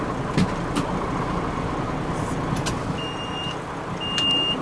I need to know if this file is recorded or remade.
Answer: recorded